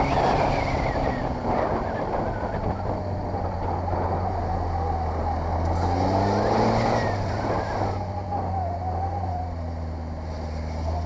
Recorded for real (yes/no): yes